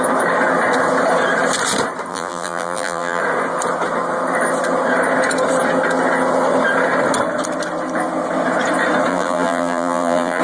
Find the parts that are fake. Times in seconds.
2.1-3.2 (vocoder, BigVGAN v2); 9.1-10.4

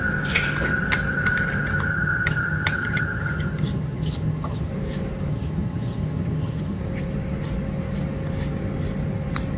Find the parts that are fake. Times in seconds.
1.9-4.7 (vocoder, HiFi-GAN); 5.3-6.8